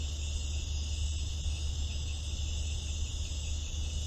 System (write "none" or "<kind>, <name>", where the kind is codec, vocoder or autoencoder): none